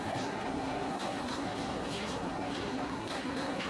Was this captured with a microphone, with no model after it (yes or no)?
no